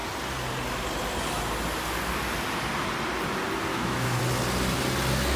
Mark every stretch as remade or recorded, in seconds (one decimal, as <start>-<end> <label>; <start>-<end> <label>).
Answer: 0.0-3.7 recorded; 3.7-4.2 remade; 4.2-5.4 recorded